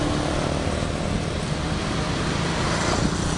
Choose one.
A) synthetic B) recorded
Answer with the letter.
B